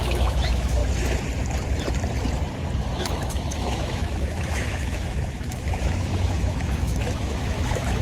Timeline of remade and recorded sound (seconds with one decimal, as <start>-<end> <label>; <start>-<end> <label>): 0.0-0.8 remade; 0.8-3.0 recorded; 3.0-8.0 remade